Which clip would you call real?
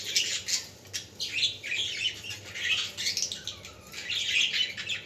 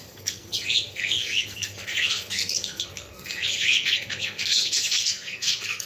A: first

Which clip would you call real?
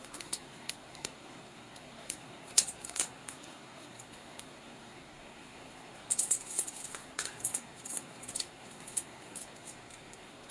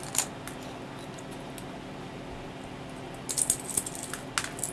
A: second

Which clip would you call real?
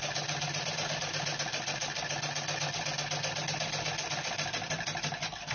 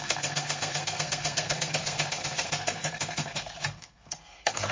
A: first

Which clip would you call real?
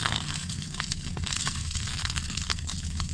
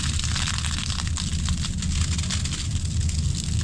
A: second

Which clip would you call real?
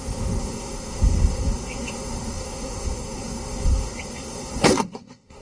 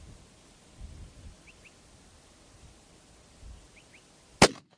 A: second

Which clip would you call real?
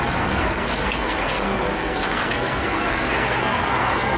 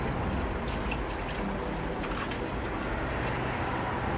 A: second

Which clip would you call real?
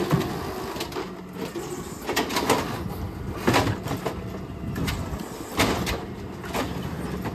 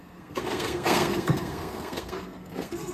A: first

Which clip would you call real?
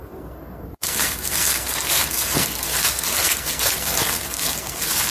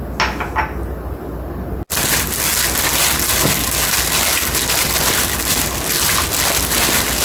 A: second